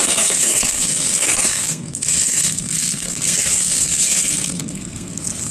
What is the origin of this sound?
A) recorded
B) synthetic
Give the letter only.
B